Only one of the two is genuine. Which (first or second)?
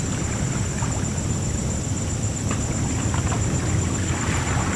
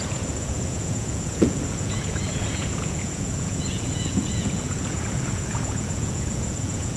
first